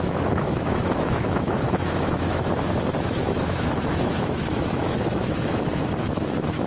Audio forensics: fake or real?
fake